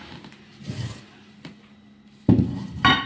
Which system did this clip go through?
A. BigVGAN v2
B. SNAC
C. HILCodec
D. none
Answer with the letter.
D